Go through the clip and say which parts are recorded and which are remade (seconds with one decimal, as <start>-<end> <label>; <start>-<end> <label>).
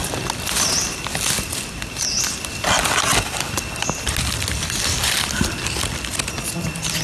0.0-7.0 recorded